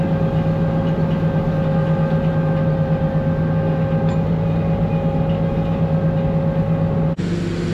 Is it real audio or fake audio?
real